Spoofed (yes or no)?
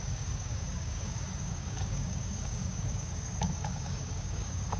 yes